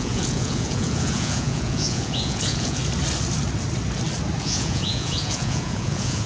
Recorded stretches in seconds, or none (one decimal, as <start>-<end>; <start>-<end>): 2.8-4.4